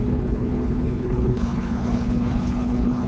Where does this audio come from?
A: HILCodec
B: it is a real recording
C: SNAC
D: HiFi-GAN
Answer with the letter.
A